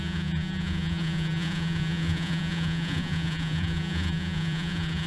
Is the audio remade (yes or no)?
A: yes